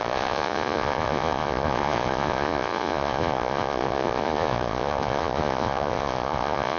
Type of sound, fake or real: fake